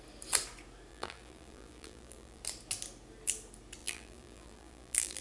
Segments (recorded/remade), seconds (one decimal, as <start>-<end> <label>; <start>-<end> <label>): 0.0-0.9 recorded; 0.9-2.4 remade; 2.4-3.8 recorded; 3.8-5.2 remade